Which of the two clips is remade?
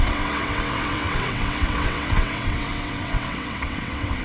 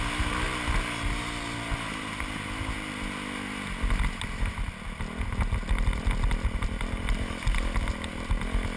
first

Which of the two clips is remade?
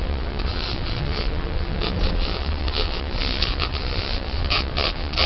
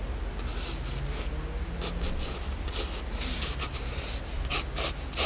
first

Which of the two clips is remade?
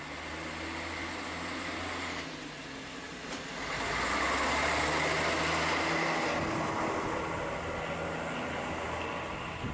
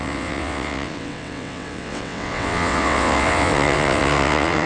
second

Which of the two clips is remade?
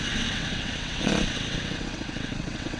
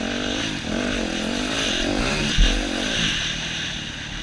first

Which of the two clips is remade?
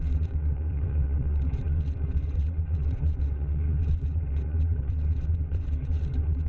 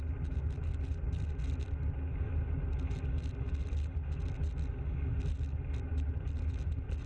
first